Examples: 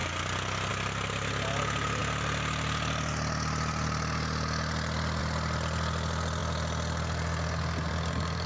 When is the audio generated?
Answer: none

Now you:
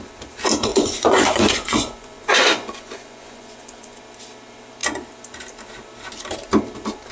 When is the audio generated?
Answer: 0.7-4.0 (vocoder, Vocos)

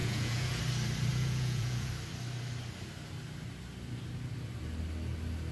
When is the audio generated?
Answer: 0.0-0.6 (vocoder, Vocos); 1.1-1.9

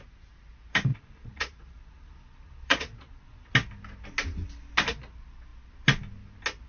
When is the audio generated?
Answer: 0.9-3.5 (vocoder, Vocos)